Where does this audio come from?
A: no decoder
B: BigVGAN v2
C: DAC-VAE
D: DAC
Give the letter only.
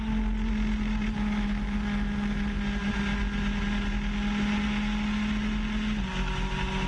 A